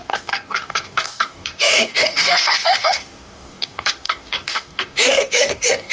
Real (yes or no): no